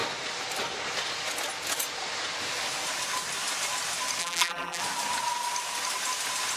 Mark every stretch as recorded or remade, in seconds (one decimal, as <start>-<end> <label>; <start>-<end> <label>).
0.0-4.2 recorded; 4.2-4.8 remade; 4.8-6.6 recorded